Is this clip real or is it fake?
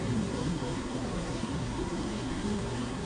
fake